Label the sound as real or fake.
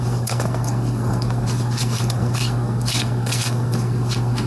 fake